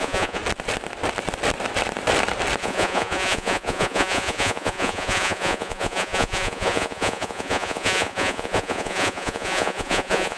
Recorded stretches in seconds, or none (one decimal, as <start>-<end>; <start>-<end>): 0.4-2.6